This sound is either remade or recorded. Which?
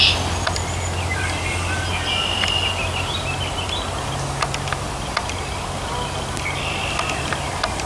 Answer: recorded